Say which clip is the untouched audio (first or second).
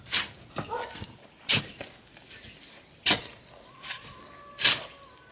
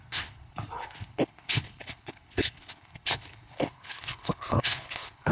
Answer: first